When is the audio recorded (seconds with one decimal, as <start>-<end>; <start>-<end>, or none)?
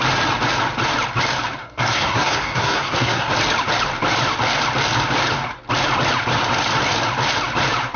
0.0-1.6; 3.3-8.0